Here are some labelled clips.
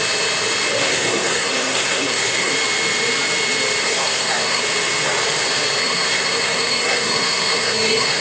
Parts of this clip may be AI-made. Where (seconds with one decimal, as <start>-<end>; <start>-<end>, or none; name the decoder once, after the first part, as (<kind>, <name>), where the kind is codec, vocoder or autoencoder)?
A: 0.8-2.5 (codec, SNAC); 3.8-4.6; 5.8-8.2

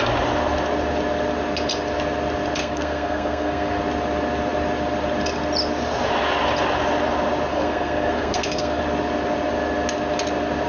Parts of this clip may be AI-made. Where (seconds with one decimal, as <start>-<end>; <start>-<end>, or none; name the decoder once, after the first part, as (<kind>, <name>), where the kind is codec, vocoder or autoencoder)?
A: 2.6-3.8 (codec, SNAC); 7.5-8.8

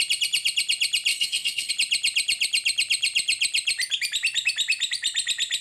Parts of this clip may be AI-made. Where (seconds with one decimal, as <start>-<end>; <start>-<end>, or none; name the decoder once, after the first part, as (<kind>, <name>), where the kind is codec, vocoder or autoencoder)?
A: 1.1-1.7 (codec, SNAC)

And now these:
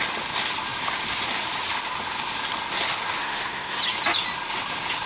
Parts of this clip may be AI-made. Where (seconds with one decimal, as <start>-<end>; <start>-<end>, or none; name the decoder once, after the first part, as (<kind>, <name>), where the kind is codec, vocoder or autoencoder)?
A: 3.2-3.8 (codec, SNAC)